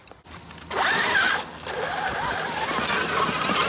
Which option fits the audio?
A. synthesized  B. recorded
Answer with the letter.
B